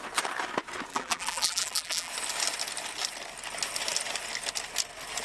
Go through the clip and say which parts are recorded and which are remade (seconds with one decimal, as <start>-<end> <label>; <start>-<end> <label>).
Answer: 0.0-0.9 recorded; 0.9-2.1 remade; 2.1-5.2 recorded